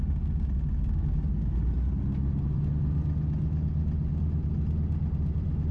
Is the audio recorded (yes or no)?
yes